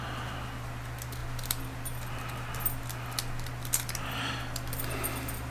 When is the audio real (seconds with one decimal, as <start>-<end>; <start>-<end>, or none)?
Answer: 0.0-5.5